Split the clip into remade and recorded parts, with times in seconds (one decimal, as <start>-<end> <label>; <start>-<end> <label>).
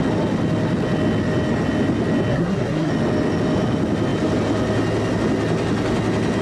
0.0-2.3 recorded; 2.3-2.9 remade; 2.9-6.4 recorded